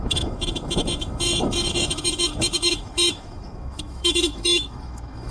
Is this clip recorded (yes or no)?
no